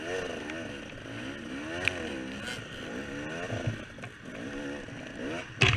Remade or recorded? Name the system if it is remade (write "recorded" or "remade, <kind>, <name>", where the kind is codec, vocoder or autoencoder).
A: recorded